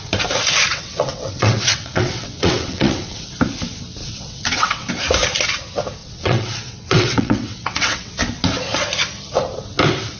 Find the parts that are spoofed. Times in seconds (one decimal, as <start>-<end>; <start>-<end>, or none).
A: 0.7-3.3; 4.0-4.9; 6.0-8.1